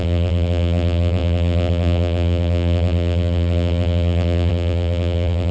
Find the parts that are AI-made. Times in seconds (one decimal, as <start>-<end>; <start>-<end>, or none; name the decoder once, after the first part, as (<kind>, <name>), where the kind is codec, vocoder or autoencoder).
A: 0.0-5.5 (vocoder, BigVGAN v2)